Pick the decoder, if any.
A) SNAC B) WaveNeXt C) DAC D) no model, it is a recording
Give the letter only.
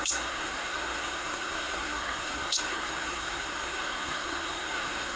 A